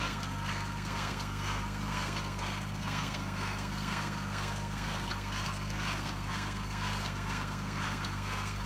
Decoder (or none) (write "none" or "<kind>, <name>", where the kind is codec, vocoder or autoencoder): codec, SNAC